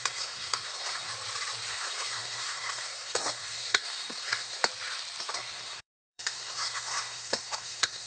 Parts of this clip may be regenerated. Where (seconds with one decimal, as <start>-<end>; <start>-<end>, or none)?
0.0-1.1; 1.7-4.6; 5.2-8.1